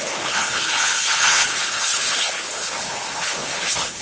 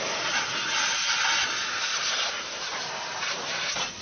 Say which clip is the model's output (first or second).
first